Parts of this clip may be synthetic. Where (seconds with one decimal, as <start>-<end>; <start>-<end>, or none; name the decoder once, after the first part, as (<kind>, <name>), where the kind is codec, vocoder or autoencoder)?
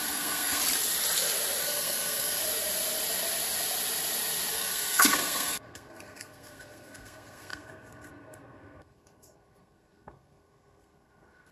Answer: 0.0-0.6 (codec, SNAC); 1.6-2.4; 4.5-11.5